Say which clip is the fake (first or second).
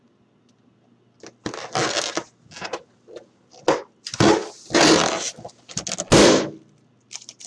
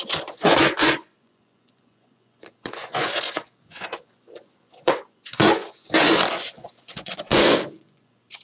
second